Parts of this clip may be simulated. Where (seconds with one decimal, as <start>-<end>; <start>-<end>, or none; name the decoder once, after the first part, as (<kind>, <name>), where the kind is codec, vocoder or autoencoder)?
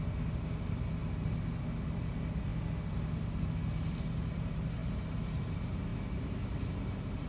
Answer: none